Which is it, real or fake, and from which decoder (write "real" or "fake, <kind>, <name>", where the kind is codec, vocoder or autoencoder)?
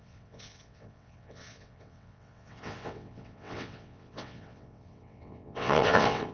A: fake, vocoder, WaveNeXt